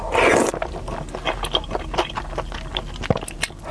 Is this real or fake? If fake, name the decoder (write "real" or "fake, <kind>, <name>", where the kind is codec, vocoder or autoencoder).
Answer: real